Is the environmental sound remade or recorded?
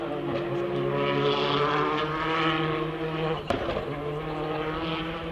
recorded